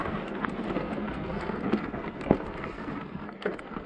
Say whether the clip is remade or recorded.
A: remade